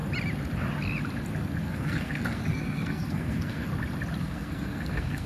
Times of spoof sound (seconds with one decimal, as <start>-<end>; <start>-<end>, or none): 1.6-3.7; 4.2-5.3